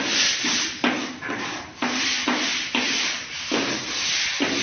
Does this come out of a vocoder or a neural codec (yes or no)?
no